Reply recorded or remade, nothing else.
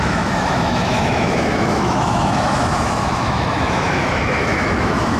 remade